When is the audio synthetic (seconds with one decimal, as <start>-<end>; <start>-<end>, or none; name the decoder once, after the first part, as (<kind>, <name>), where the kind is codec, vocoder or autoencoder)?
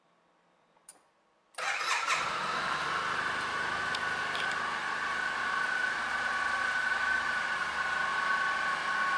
0.0-0.9 (vocoder, BigVGAN v2); 1.9-3.9; 5.4-8.1